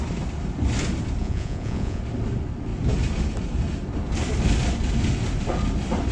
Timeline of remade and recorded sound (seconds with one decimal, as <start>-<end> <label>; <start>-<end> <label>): 0.0-1.2 recorded; 1.2-2.0 remade; 2.0-6.1 recorded